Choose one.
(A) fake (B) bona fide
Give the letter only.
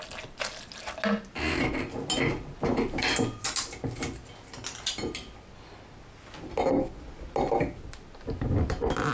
B